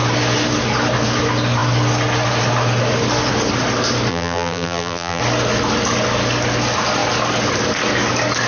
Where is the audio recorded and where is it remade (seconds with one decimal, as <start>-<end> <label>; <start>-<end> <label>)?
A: 0.0-4.1 recorded; 4.1-5.2 remade; 5.2-8.5 recorded